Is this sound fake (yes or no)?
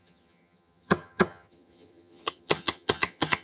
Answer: yes